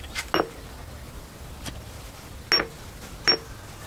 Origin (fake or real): real